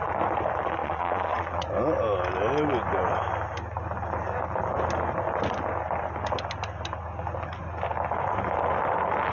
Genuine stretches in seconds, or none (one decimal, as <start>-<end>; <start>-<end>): 0.0-0.8; 1.7-9.3